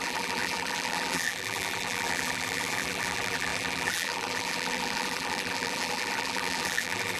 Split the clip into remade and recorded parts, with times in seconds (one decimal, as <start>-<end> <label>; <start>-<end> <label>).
0.0-7.2 remade